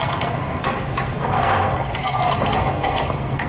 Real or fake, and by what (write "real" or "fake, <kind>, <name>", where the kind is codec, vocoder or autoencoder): fake, codec, SNAC